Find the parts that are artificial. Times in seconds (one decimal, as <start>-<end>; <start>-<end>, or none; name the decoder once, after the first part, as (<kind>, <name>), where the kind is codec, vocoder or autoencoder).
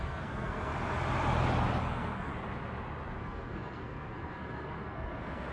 0.0-0.7 (codec, SNAC); 1.8-2.3; 3.2-5.5